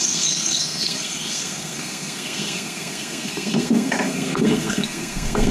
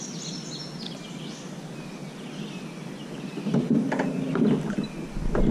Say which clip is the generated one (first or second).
first